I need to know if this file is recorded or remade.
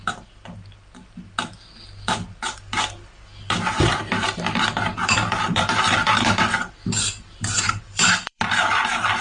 remade